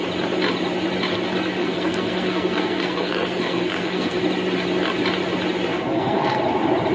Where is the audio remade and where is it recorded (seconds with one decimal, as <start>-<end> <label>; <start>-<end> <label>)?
0.0-1.6 recorded; 1.6-4.2 remade; 4.2-5.7 recorded; 5.7-6.4 remade; 6.4-6.9 recorded